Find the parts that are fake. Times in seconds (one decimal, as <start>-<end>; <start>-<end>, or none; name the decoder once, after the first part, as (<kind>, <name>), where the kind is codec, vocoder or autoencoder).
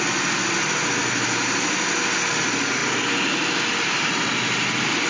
none